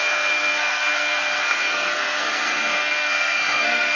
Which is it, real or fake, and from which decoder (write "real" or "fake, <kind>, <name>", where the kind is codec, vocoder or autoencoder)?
fake, codec, SNAC